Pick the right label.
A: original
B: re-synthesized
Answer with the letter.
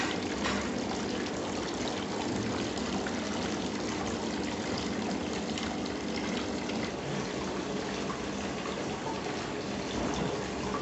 A